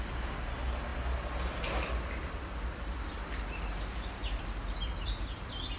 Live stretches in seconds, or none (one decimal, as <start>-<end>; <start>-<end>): 0.0-5.8